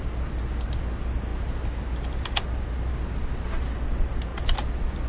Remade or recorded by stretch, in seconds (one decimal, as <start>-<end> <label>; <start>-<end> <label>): 0.0-5.1 recorded